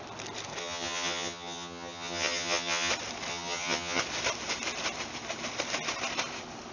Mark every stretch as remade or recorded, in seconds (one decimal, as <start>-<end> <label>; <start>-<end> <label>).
0.0-0.6 recorded; 0.6-2.9 remade; 2.9-3.3 recorded; 3.3-4.0 remade; 4.0-6.7 recorded